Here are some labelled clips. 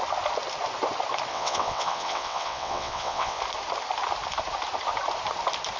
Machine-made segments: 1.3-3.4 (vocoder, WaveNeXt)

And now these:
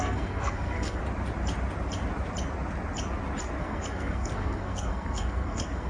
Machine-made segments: 0.0-1.0 (codec, SNAC); 3.6-5.9

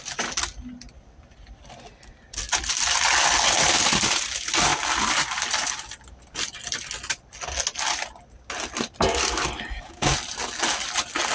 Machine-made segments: none